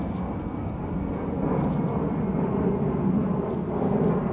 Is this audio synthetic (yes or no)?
no